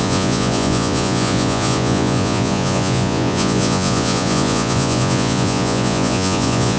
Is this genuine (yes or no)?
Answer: no